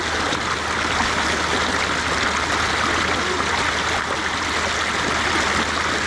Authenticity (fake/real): real